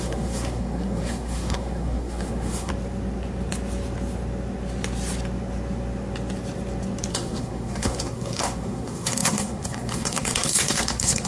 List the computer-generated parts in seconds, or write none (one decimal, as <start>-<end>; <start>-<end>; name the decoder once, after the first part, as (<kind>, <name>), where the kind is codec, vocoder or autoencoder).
0.0-2.7 (codec, SNAC); 7.1-11.3